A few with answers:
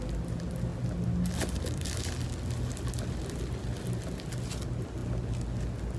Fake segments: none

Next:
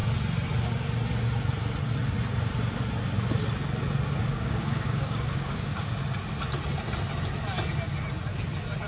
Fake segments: 4.3-5.9

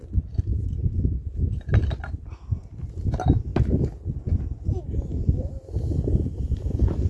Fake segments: none

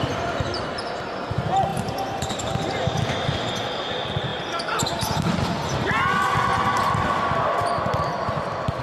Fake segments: none